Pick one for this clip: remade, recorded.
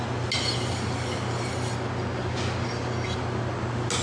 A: recorded